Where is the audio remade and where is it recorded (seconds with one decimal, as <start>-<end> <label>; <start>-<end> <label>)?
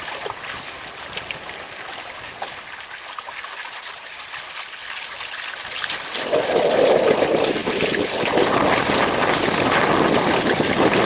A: 0.0-11.0 recorded